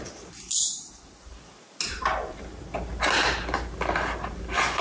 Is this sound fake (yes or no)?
no